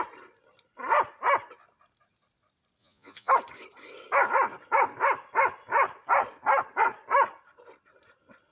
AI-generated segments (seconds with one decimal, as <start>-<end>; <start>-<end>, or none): 2.8-3.3